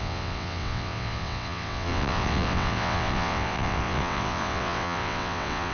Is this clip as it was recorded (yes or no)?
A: no